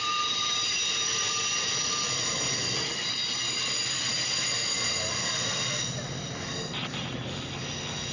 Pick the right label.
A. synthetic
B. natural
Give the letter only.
B